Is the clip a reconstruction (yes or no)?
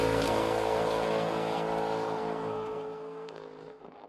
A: yes